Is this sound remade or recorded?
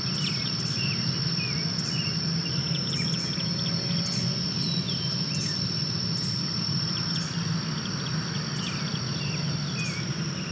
recorded